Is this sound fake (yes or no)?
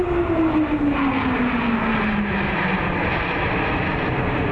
no